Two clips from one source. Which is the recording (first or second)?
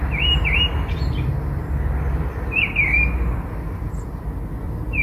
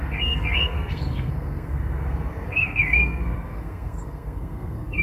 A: first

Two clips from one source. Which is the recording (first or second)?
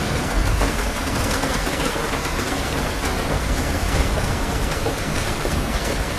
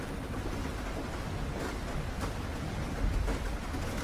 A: second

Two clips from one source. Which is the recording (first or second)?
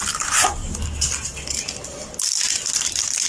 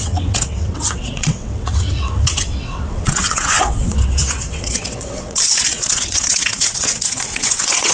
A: first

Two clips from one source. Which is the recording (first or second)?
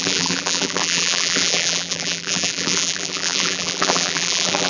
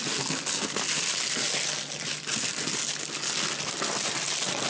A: second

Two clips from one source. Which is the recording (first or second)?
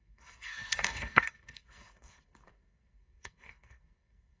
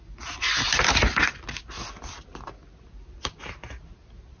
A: second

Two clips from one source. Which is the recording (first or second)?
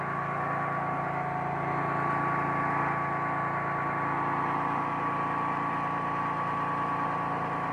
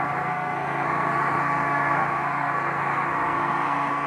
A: first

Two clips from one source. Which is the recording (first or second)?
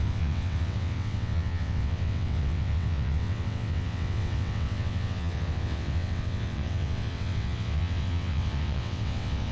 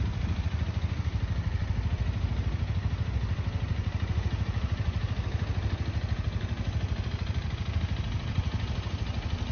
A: second